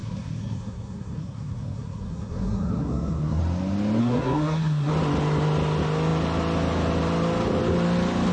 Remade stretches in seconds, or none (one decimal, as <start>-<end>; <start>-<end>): 0.0-3.4; 4.0-4.9